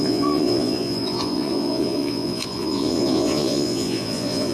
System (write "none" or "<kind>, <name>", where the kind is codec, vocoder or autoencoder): vocoder, Vocos